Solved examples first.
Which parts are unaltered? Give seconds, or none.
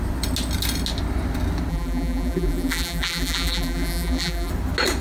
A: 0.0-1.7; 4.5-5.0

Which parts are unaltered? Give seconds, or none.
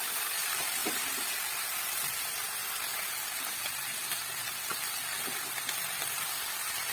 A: 0.0-6.9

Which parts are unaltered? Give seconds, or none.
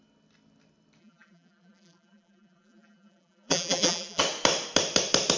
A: 0.0-1.0; 4.2-5.4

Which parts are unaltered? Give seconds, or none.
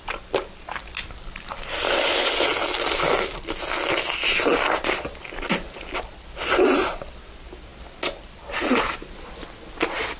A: 0.0-10.2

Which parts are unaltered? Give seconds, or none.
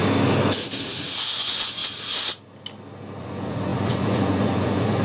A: 0.0-1.2; 1.8-3.2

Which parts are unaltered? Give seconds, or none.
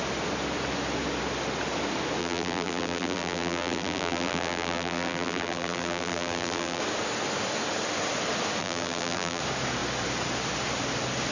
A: 0.0-2.2; 6.8-8.6; 9.4-11.3